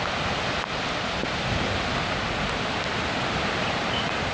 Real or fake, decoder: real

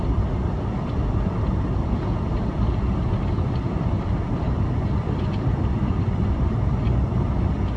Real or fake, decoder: fake, vocoder, BigVGAN v2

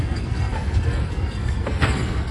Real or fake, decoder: fake, codec, SNAC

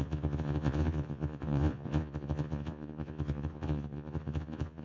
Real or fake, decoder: fake, vocoder, Vocos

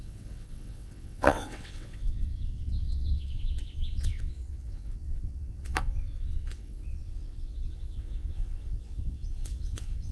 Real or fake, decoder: fake, vocoder, WaveNeXt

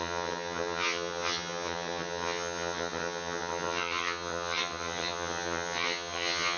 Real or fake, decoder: fake, vocoder, HiFi-GAN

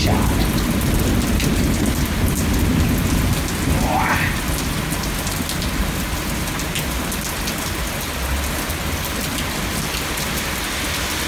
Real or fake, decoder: real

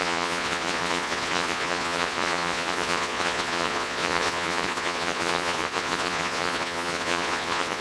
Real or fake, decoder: fake, vocoder, Vocos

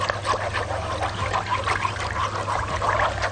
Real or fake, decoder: real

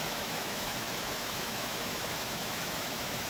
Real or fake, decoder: fake, autoencoder, DAC-VAE